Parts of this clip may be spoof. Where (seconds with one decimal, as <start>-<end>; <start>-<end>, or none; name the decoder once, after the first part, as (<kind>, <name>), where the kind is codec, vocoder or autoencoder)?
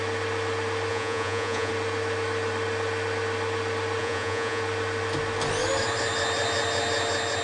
0.9-1.7 (vocoder, Vocos); 4.0-4.6